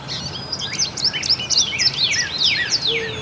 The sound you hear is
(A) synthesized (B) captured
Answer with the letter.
B